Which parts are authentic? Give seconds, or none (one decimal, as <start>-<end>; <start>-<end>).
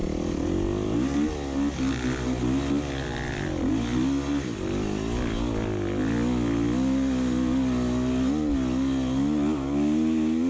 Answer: 0.0-10.5